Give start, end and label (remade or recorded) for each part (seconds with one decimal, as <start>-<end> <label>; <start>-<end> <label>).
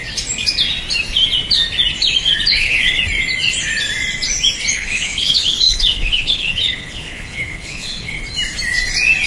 0.0-2.5 recorded; 2.5-3.0 remade; 3.0-4.7 recorded; 4.7-8.2 remade; 8.2-9.3 recorded